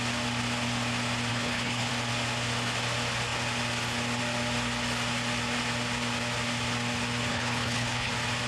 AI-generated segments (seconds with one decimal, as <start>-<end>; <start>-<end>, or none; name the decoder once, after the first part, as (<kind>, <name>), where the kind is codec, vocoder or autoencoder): 1.3-1.9 (codec, HILCodec); 7.3-8.1